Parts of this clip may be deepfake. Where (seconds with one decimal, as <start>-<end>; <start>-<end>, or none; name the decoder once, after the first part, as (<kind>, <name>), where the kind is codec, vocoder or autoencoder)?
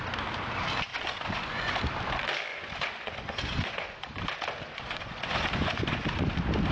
0.9-1.8 (vocoder, Vocos); 2.5-4.2; 4.7-6.3